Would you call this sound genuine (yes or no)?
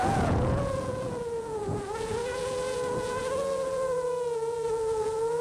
no